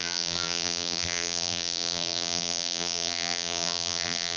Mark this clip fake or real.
fake